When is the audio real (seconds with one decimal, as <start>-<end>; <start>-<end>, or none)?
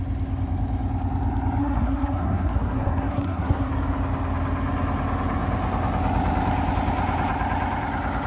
0.0-1.6; 3.7-8.3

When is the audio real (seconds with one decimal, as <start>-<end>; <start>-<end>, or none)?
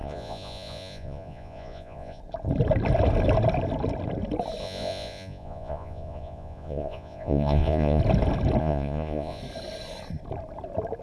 2.2-4.6; 8.0-8.6; 9.4-11.0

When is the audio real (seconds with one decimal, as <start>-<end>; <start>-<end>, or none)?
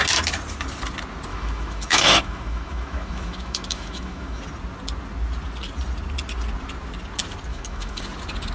0.0-1.3; 4.4-7.5; 8.0-8.5